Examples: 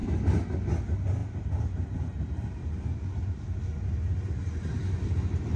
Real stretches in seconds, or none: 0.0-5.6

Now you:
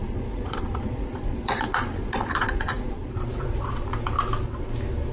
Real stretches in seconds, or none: 3.9-5.1

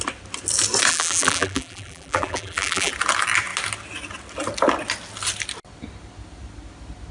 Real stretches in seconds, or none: 0.0-0.9; 2.9-7.1

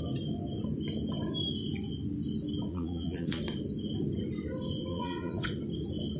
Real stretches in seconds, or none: 0.0-2.7; 3.4-4.9; 5.5-6.2

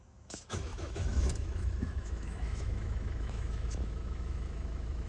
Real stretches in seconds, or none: none

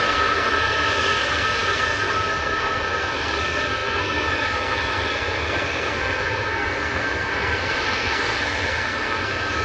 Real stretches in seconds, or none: none